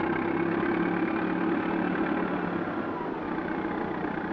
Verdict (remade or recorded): recorded